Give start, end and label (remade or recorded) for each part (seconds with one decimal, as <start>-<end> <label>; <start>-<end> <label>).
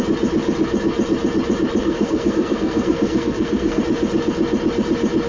0.0-1.8 recorded; 1.8-3.8 remade; 3.8-5.3 recorded